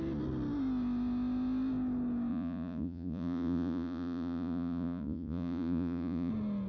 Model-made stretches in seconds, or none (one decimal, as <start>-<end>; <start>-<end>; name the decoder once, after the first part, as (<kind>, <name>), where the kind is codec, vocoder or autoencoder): 2.3-6.3 (vocoder, Vocos)

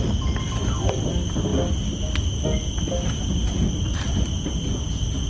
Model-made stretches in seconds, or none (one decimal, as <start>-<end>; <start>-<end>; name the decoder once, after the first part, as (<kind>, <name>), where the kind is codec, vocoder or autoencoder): none

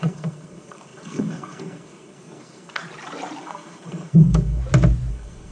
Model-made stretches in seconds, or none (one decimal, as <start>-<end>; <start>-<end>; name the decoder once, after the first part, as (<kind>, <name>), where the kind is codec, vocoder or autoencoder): 0.0-2.8 (codec, SNAC); 3.4-4.6; 5.1-5.5

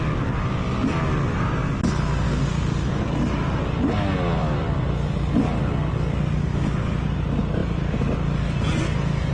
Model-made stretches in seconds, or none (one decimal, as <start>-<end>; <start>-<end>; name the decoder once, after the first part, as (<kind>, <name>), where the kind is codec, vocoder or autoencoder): none

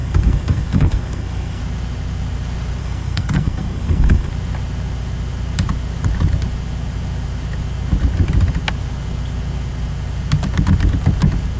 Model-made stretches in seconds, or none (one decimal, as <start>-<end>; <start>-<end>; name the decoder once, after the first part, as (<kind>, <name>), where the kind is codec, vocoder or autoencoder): 0.0-1.6 (codec, SNAC); 2.8-4.3

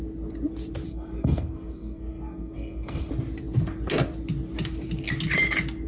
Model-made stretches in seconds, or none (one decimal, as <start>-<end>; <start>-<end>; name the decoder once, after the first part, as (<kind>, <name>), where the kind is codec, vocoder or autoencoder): 0.9-3.1 (codec, SNAC)

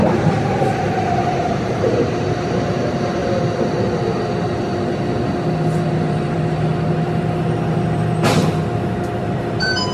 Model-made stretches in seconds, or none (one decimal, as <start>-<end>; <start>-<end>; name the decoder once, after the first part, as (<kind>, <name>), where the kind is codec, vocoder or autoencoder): 0.0-3.2 (vocoder, BigVGAN v2); 5.9-6.7; 9.2-9.9